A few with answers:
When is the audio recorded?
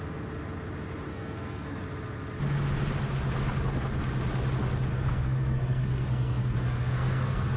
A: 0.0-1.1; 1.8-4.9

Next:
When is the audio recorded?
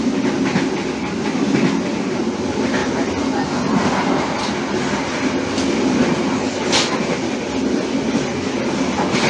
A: 0.0-9.3